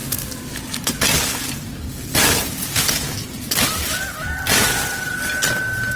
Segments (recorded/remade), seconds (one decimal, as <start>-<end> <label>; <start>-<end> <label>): 0.0-6.0 recorded